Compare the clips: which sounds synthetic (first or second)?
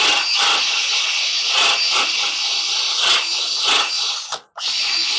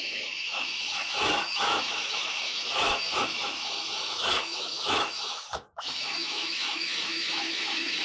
second